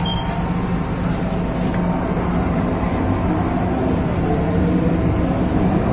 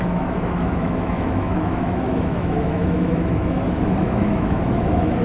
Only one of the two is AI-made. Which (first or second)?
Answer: second